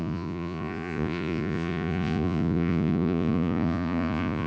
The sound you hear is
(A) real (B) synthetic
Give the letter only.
B